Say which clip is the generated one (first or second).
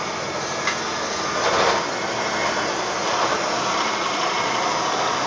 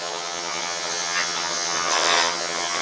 second